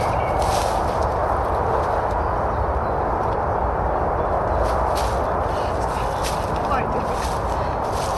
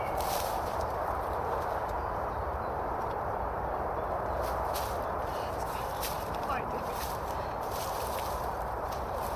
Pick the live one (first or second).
first